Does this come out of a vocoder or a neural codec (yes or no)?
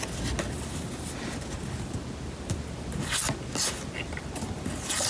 no